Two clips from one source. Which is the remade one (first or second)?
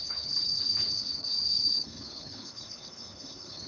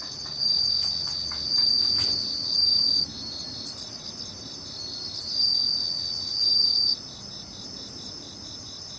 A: first